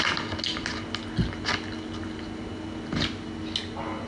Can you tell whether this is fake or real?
real